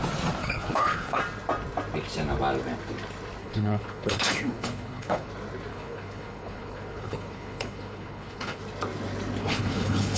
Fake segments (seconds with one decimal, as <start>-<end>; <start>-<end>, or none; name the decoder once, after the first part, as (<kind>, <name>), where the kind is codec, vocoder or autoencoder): 0.4-1.2 (codec, HILCodec); 3.4-5.3; 5.7-8.6; 9.4-10.2